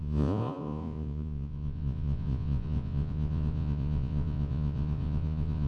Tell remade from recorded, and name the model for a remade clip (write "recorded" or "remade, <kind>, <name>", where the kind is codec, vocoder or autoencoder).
remade, vocoder, Vocos